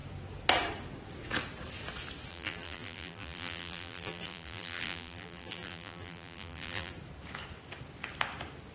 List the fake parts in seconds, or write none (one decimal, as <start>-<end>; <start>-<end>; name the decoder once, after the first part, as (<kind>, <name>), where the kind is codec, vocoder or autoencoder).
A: 2.3-6.9 (vocoder, BigVGAN v2)